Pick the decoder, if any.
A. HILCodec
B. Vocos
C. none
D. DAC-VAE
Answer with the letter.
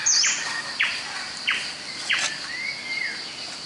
C